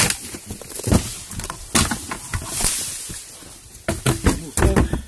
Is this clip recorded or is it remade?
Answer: recorded